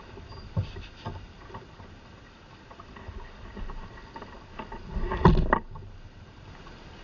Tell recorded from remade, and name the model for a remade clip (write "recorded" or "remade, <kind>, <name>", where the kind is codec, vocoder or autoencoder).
recorded